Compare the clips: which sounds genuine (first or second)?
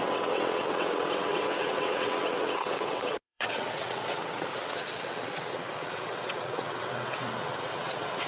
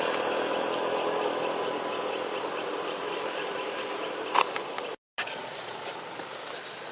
second